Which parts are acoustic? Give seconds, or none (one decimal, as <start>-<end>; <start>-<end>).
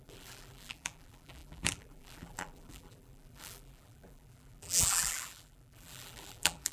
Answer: none